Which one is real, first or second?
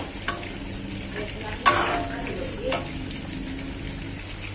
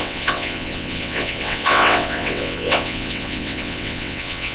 first